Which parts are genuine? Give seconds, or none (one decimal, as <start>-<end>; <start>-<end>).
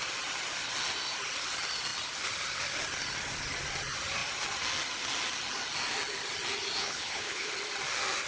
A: 0.0-6.8; 7.5-8.3